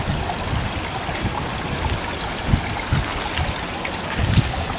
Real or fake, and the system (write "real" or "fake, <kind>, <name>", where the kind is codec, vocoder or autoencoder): real